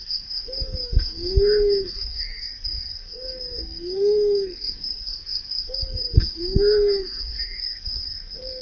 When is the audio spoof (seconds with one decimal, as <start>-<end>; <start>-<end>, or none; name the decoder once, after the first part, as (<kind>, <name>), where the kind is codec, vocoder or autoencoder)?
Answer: 0.0-8.6 (codec, SNAC)